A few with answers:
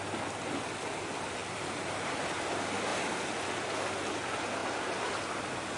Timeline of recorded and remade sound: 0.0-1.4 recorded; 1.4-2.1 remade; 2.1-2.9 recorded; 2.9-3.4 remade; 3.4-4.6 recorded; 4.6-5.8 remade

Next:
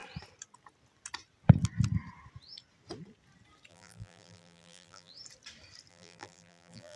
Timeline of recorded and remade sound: 0.0-3.7 recorded; 3.7-5.1 remade; 5.1-5.9 recorded; 5.9-7.0 remade

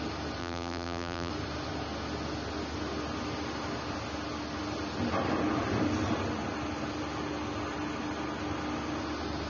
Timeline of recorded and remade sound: 0.0-0.4 recorded; 0.4-1.3 remade; 1.3-9.5 recorded

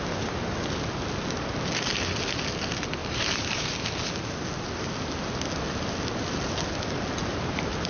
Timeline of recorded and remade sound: 0.0-3.0 recorded; 3.0-3.7 remade; 3.7-7.2 recorded; 7.2-7.9 remade